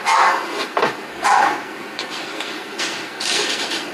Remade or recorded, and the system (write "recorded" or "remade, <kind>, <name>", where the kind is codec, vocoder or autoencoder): remade, codec, SNAC